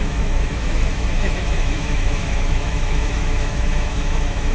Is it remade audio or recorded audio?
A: remade